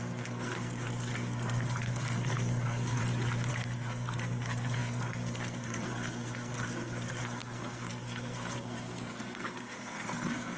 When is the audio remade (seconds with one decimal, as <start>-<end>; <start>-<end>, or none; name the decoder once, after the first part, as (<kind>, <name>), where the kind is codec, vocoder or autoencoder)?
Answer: 0.0-3.0 (codec, SNAC); 3.5-10.6